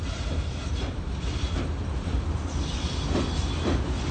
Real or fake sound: real